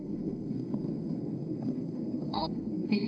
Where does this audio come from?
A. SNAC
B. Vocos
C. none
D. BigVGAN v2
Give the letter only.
A